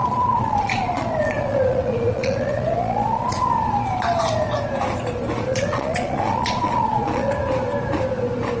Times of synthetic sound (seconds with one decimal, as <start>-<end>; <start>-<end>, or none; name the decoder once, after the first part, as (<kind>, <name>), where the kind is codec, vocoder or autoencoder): 0.0-3.5 (vocoder, Vocos); 5.5-7.3